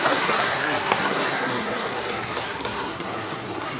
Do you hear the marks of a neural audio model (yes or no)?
yes